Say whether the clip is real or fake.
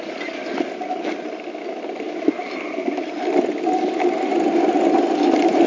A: real